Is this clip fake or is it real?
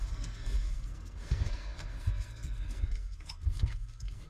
fake